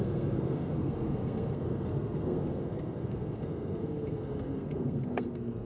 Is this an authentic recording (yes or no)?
no